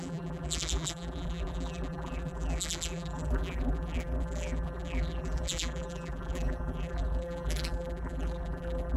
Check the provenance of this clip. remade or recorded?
remade